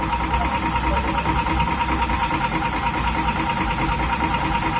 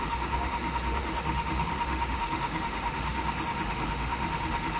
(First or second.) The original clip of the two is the first